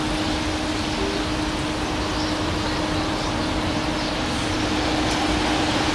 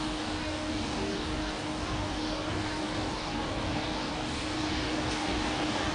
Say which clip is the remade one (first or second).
second